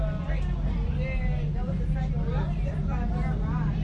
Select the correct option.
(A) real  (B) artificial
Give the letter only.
A